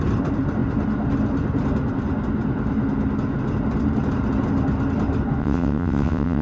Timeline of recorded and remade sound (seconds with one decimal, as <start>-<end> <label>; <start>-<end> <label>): 0.0-5.4 recorded; 5.4-6.4 remade